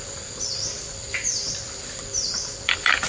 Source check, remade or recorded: remade